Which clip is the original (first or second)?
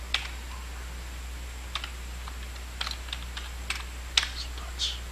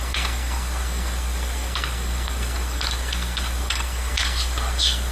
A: first